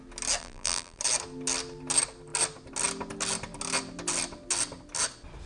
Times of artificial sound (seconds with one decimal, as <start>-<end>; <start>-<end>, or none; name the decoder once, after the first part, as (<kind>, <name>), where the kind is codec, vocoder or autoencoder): 0.4-1.0 (vocoder, BigVGAN v2)